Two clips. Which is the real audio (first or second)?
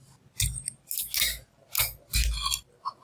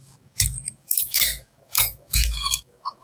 first